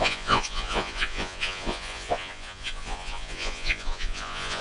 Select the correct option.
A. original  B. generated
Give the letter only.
B